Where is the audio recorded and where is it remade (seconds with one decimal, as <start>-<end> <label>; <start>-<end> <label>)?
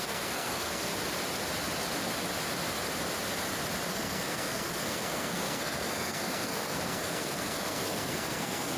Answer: 0.0-0.9 remade; 0.9-3.9 recorded; 3.9-8.8 remade